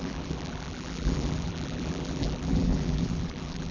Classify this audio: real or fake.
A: fake